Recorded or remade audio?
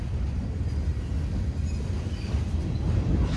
recorded